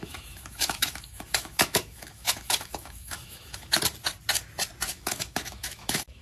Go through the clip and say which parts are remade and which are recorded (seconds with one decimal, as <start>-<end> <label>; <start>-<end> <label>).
0.0-3.7 remade; 3.7-4.9 recorded; 4.9-6.2 remade